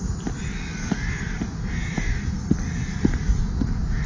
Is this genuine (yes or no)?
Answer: yes